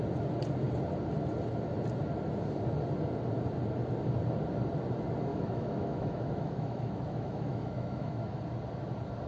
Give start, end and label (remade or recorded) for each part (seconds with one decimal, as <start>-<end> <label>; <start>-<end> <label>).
0.0-5.3 recorded; 5.3-8.4 remade; 8.4-9.3 recorded